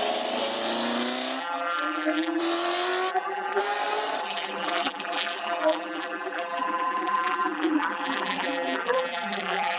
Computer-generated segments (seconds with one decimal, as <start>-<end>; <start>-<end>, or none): 1.4-2.4; 3.1-3.6; 4.2-9.8